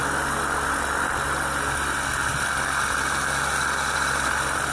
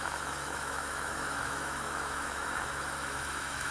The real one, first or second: first